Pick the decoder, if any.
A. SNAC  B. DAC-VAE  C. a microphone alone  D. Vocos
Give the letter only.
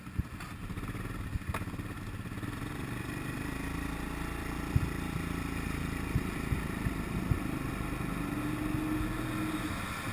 C